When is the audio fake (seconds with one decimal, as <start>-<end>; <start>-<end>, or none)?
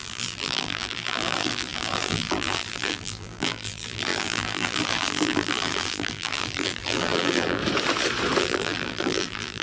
0.0-7.6; 8.4-9.6